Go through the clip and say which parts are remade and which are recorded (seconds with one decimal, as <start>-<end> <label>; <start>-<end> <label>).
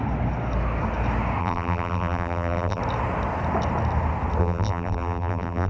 0.0-1.4 recorded; 1.4-2.8 remade; 2.8-4.4 recorded; 4.4-5.7 remade